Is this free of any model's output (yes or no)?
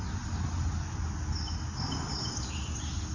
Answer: yes